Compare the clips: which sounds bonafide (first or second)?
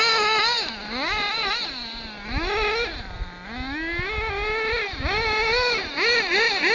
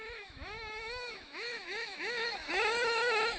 first